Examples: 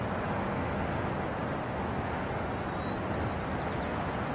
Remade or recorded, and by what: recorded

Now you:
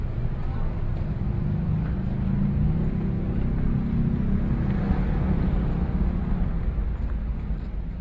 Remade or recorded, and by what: recorded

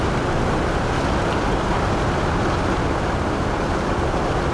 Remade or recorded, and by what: recorded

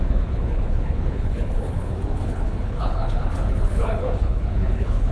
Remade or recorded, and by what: remade, codec, HILCodec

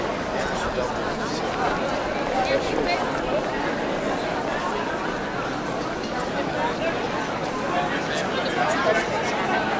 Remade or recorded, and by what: recorded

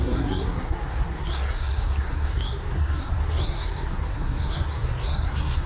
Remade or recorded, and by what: remade, codec, SNAC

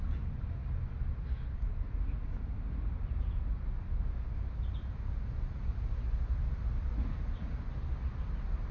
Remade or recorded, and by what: recorded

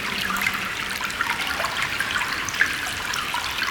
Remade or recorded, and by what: remade, vocoder, BigVGAN v2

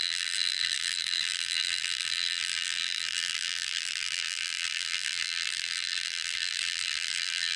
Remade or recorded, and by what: remade, vocoder, BigVGAN v2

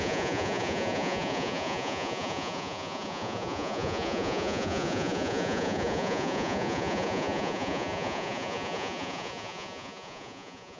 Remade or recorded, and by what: remade, vocoder, Vocos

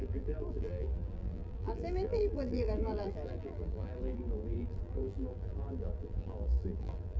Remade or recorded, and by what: remade, vocoder, BigVGAN v2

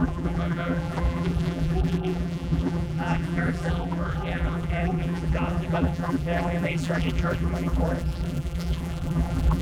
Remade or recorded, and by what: remade, vocoder, BigVGAN v2